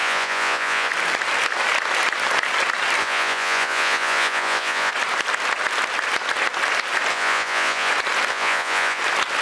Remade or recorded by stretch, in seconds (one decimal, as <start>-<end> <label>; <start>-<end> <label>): 0.0-0.9 remade; 0.9-3.0 recorded; 3.0-4.9 remade; 4.9-7.1 recorded; 7.1-7.9 remade; 7.9-8.3 recorded; 8.3-9.0 remade; 9.0-9.4 recorded